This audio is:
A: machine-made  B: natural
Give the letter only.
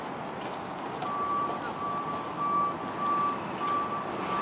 B